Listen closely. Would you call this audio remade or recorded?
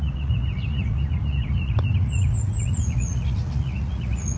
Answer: remade